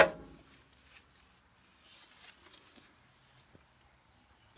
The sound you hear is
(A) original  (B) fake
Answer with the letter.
A